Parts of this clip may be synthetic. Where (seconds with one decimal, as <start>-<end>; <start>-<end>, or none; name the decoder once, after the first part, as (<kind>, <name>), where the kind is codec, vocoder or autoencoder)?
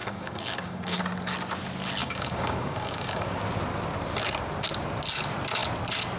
0.0-1.0 (codec, DAC); 2.0-3.4